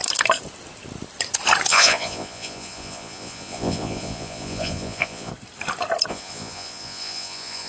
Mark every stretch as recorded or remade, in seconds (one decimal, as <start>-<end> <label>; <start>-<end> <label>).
0.0-1.7 recorded; 1.7-5.3 remade; 5.3-6.1 recorded; 6.1-7.7 remade